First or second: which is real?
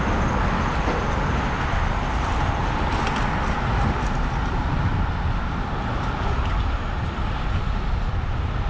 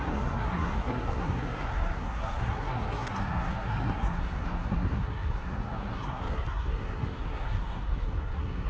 first